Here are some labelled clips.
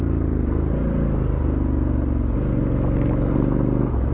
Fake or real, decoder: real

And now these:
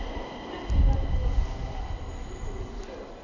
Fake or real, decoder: real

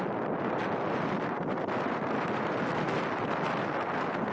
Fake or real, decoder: real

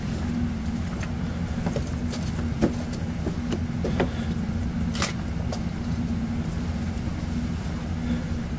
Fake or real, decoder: real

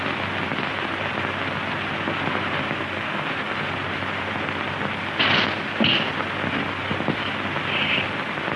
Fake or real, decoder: real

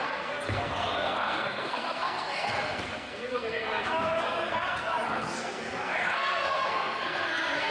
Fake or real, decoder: fake, codec, SNAC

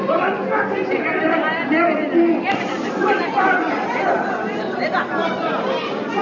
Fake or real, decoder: real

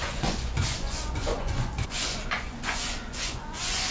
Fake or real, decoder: fake, vocoder, Vocos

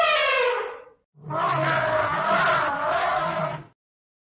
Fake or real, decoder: real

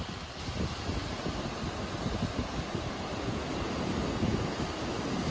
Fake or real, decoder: real